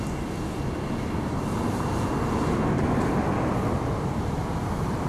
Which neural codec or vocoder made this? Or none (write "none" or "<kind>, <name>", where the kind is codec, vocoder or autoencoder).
none